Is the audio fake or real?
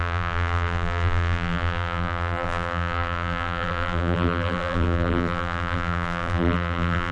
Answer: fake